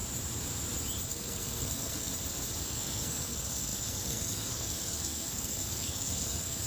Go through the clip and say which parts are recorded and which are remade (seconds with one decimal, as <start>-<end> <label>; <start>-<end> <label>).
0.0-1.1 recorded; 1.1-2.1 remade; 2.1-2.6 recorded; 2.6-6.7 remade